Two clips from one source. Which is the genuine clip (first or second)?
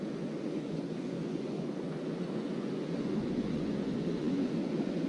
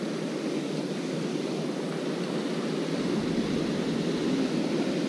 second